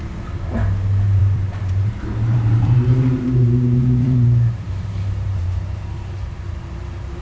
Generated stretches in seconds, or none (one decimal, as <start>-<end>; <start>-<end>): 1.2-4.8; 5.4-6.6